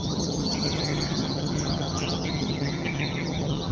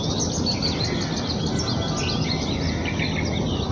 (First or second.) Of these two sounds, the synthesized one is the first